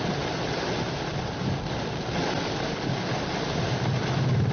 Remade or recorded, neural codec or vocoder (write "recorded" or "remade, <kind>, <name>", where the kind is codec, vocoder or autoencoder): recorded